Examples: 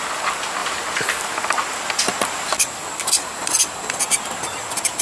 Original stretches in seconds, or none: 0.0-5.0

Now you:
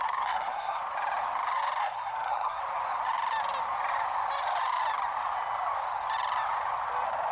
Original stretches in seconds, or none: 0.8-1.8; 2.6-7.3

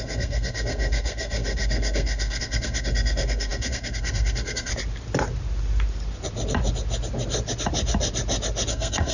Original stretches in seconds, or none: 4.7-8.7

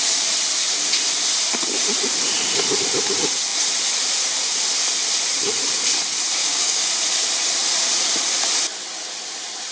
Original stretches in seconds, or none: 0.0-6.4; 6.9-9.7

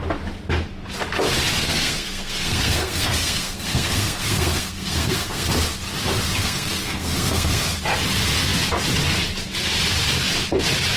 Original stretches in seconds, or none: 0.0-1.5; 5.5-6.4; 7.8-11.0

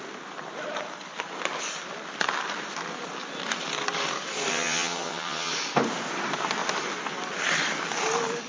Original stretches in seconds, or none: 0.0-4.5; 5.5-8.5

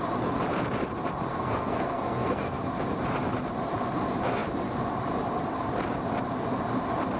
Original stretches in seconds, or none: 0.0-1.3; 2.7-7.2

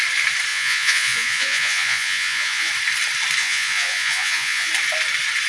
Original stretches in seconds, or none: 0.0-0.5; 2.7-3.4; 4.7-5.5